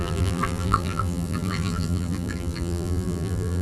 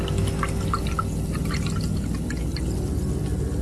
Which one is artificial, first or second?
first